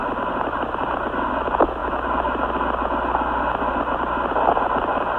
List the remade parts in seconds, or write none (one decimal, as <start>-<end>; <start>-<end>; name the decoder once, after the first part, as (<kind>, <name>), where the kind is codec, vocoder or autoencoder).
none